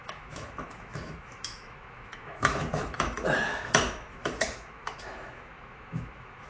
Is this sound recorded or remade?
remade